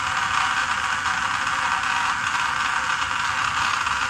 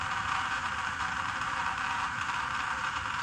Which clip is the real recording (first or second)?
first